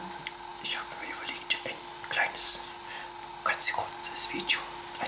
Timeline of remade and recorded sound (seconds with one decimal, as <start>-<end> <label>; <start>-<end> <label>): 0.0-5.1 recorded